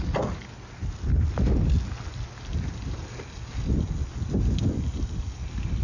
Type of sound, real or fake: real